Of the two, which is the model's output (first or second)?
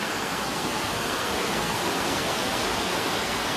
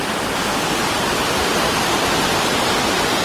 first